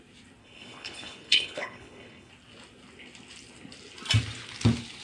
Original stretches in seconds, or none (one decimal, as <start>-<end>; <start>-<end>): 0.0-0.4; 2.3-5.0